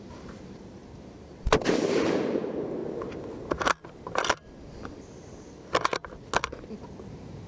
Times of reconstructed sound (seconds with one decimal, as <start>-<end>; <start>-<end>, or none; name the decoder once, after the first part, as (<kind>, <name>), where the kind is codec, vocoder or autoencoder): 0.0-2.8 (vocoder, BigVGAN v2); 7.1-7.5